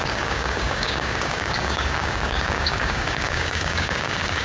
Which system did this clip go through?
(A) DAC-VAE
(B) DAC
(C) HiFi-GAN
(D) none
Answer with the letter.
B